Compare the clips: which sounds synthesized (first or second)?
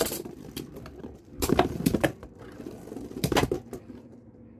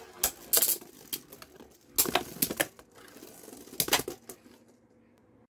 first